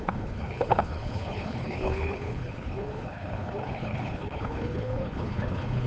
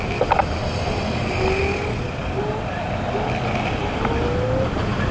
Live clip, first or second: second